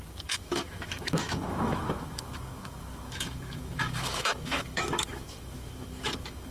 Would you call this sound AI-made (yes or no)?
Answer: yes